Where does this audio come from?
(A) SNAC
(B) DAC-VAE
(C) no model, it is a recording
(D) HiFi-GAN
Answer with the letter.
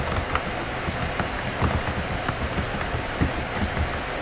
C